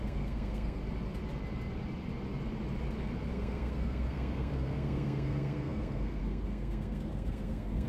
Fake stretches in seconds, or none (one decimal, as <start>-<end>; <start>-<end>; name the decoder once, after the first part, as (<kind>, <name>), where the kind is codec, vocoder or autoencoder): 0.0-0.8 (codec, SNAC); 3.3-7.9